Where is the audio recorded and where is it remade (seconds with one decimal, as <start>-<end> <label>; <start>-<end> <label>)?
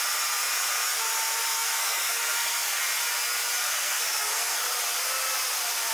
0.0-1.5 recorded; 1.5-2.8 remade; 2.8-3.6 recorded; 3.6-4.6 remade; 4.6-5.9 recorded